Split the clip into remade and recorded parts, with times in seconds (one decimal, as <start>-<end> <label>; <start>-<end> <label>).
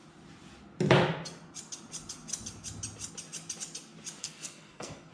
0.0-4.2 recorded; 4.2-5.1 remade